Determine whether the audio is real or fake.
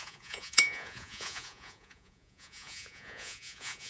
fake